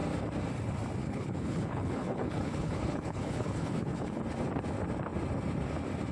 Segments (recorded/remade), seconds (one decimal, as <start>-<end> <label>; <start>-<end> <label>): 0.0-1.0 recorded; 1.0-4.2 remade; 4.2-6.1 recorded